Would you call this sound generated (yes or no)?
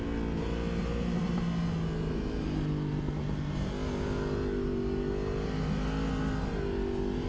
no